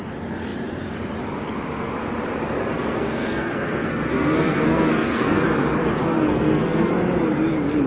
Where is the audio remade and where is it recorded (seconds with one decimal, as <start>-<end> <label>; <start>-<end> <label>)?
0.0-2.6 recorded; 2.6-5.4 remade; 5.4-6.0 recorded; 6.0-6.9 remade; 6.9-7.9 recorded